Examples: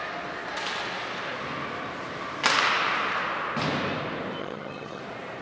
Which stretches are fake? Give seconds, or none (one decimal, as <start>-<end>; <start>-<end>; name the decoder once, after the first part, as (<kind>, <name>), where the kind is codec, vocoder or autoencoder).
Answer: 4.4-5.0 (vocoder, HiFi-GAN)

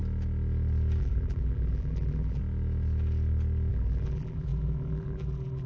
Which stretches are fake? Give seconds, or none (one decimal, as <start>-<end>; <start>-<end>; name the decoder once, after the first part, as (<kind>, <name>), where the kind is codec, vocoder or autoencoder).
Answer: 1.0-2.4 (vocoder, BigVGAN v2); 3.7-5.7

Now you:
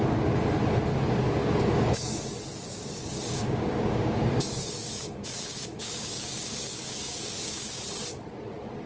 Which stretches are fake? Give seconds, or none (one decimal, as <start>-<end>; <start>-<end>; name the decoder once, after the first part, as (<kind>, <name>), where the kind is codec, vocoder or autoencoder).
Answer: 1.4-2.2 (codec, DAC); 2.7-7.8

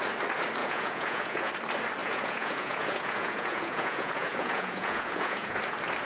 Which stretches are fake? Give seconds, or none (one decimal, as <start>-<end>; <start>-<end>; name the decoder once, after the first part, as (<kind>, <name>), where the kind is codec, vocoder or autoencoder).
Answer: 0.6-1.5 (vocoder, Vocos); 2.0-5.6

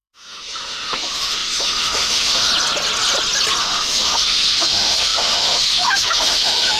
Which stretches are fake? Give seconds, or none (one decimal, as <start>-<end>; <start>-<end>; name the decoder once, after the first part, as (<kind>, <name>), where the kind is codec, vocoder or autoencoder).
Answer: 0.0-2.5 (autoencoder, DAC-VAE); 3.6-6.8

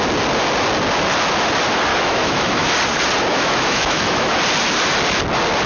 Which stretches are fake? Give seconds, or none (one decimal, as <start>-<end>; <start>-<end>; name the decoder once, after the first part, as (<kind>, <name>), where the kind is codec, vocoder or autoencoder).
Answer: 1.9-2.7 (autoencoder, DAC-VAE); 3.3-4.3

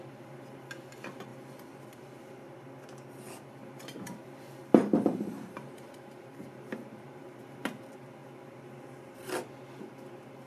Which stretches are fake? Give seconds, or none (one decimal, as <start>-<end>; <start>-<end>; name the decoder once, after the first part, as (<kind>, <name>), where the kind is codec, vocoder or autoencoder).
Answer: 4.7-7.4 (vocoder, BigVGAN v2)

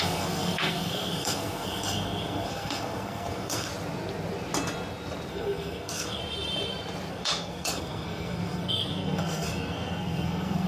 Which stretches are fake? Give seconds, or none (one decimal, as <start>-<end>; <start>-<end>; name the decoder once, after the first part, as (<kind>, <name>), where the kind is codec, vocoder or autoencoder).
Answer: 0.0-3.7 (codec, SNAC); 5.3-6.2; 7.1-10.7